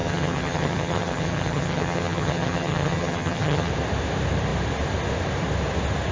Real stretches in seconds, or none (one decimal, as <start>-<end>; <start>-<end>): 3.7-6.1